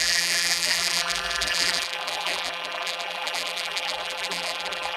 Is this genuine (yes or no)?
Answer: no